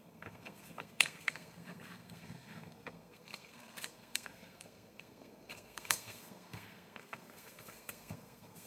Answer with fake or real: fake